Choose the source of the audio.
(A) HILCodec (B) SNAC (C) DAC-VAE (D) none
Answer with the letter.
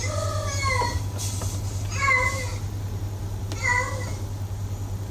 D